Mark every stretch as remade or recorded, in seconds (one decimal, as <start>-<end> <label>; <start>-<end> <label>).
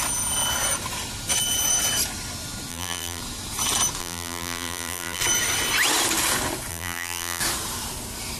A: 0.0-2.7 recorded; 2.7-3.2 remade; 3.2-4.0 recorded; 4.0-5.2 remade; 5.2-6.7 recorded; 6.7-7.4 remade; 7.4-8.4 recorded